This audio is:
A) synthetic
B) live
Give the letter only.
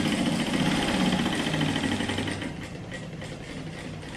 B